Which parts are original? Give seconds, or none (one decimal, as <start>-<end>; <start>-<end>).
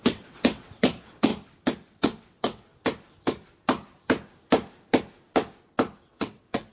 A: 1.3-1.9; 2.7-6.1